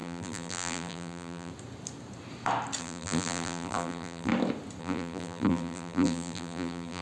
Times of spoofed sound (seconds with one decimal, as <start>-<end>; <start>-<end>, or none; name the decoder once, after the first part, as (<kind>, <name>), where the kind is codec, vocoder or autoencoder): 0.0-1.5 (vocoder, BigVGAN v2); 2.8-4.3; 4.8-7.0